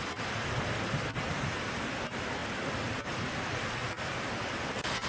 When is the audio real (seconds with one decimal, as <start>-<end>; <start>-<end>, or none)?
0.0-3.8; 4.3-5.1